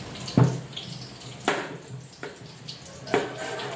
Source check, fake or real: real